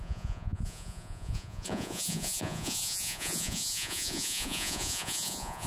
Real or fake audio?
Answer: fake